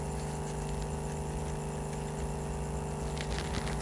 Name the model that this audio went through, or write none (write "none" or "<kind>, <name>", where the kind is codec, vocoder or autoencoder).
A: none